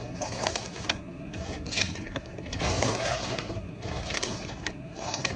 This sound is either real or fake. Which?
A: fake